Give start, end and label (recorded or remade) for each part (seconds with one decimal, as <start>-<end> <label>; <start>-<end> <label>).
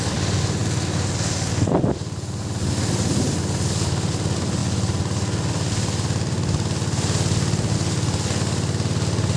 0.0-9.4 recorded